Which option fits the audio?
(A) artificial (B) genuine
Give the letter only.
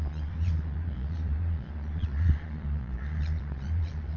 A